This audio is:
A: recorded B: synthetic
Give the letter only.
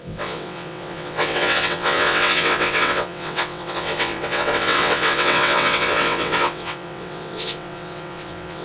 B